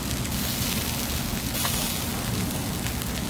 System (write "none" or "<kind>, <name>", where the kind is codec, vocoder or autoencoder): none